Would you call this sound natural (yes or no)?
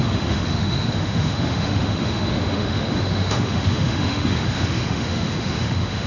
no